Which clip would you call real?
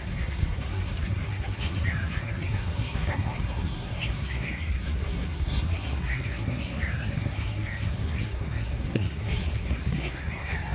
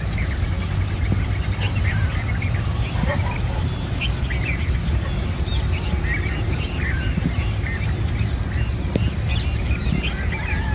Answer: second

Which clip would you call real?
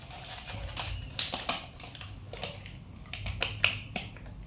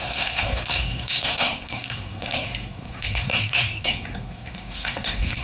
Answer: first